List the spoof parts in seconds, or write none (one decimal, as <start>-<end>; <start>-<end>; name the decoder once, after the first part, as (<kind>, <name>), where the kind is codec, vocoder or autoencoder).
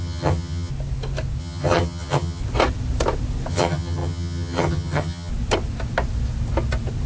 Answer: 0.0-0.7 (vocoder, HiFi-GAN); 1.4-2.4; 3.5-5.3